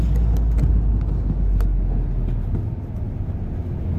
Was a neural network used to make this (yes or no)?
no